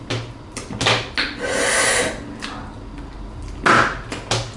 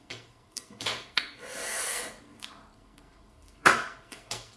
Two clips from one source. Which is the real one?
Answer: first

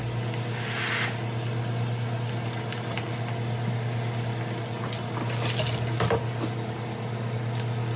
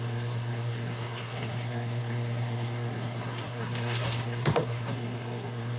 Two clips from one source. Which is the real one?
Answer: first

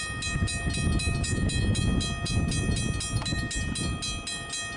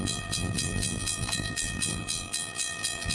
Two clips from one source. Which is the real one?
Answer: first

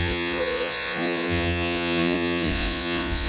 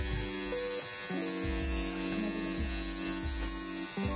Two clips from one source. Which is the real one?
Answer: second